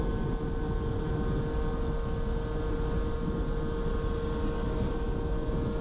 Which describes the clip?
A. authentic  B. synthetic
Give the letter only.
A